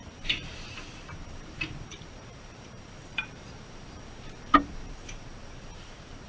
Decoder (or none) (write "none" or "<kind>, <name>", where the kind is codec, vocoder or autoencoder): vocoder, BigVGAN v2